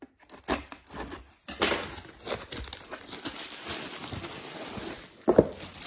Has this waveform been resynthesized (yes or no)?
no